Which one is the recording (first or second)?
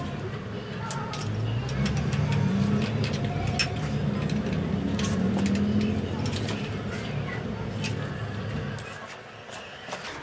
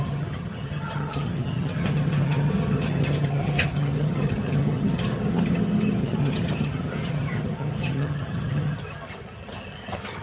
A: first